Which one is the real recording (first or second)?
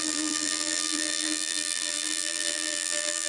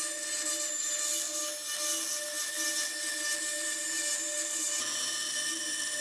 second